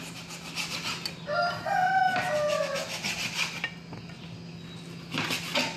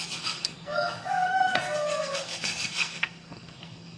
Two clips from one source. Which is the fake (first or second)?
second